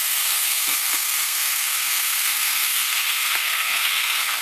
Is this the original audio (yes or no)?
no